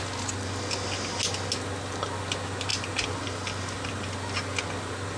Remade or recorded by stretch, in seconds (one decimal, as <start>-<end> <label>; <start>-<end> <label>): 0.0-5.2 recorded